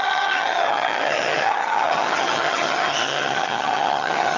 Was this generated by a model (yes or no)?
yes